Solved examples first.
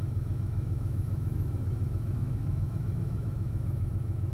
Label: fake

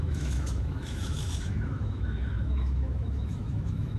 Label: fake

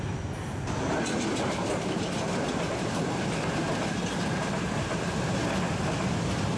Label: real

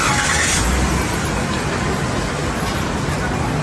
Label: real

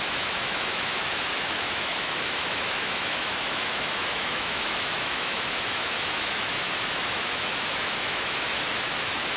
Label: fake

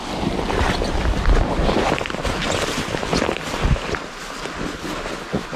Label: real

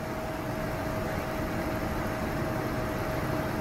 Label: real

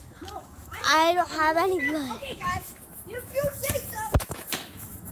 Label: fake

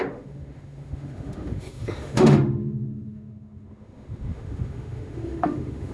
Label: fake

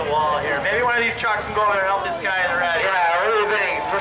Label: real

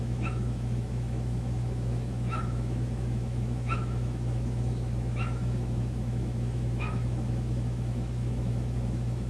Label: fake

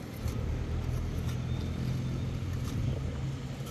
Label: real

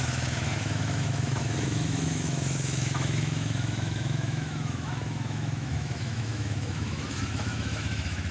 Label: fake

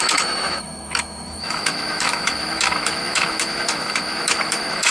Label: fake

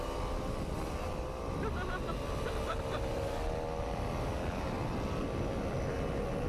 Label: real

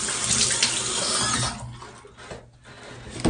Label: real